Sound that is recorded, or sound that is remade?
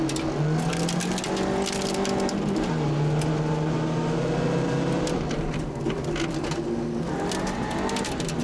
recorded